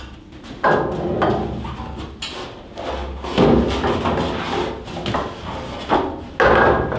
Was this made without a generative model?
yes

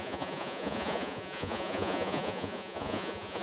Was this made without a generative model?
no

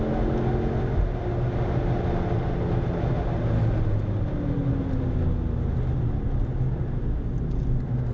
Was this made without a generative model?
yes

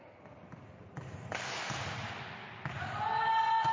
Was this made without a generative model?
yes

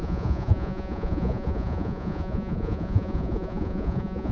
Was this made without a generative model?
no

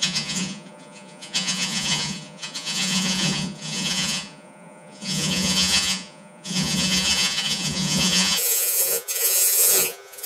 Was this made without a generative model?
no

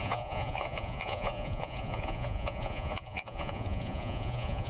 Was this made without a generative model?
no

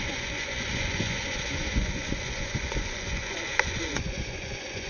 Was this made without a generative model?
no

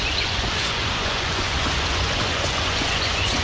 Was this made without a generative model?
no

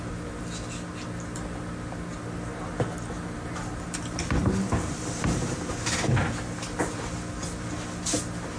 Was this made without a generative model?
yes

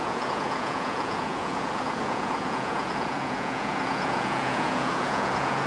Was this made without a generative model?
no